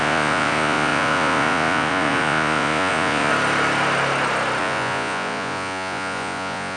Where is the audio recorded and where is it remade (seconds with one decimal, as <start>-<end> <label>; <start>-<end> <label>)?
0.0-3.3 remade; 3.3-4.6 recorded; 4.6-6.8 remade